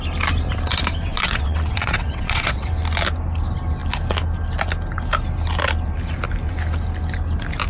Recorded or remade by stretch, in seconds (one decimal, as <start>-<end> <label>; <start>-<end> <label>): 0.0-1.1 recorded; 1.1-2.7 remade; 2.7-7.7 recorded